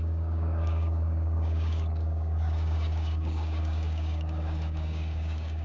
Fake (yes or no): yes